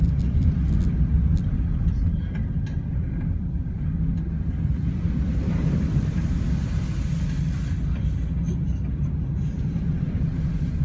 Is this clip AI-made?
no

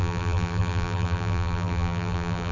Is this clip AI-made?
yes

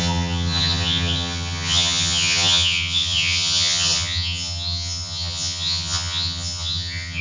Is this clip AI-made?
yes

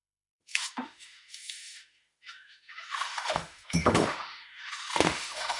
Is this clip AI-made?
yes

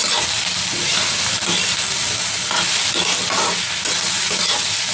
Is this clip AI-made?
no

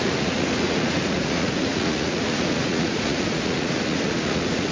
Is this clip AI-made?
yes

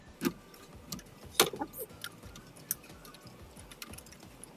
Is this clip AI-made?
no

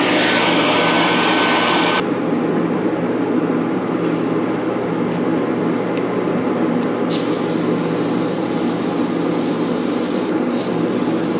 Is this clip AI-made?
no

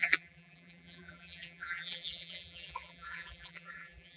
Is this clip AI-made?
yes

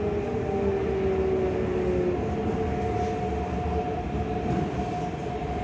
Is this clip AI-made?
no